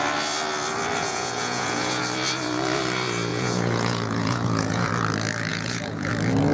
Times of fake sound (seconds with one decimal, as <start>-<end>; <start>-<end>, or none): 1.0-2.0; 3.3-4.9; 5.5-6.1